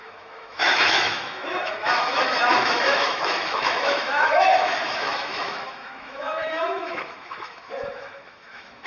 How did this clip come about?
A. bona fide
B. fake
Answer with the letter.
B